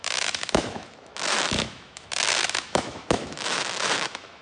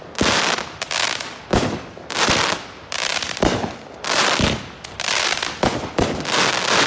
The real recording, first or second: second